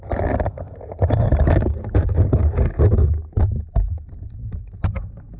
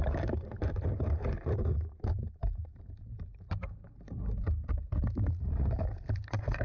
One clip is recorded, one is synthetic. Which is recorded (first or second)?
first